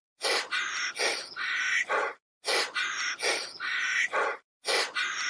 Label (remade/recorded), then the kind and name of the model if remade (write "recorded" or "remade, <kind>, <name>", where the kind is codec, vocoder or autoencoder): recorded